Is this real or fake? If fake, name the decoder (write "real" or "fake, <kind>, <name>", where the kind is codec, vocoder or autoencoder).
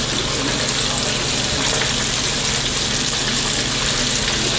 real